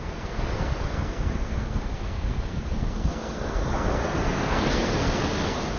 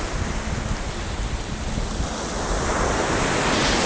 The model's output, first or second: first